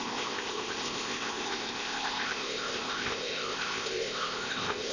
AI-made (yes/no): yes